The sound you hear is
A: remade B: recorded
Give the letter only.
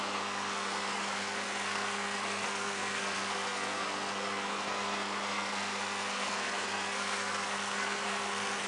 A